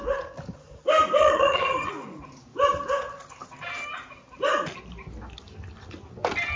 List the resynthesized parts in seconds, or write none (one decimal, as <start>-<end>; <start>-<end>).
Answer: 1.2-1.9